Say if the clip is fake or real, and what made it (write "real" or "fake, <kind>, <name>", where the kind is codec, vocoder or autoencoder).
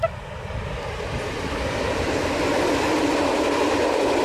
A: real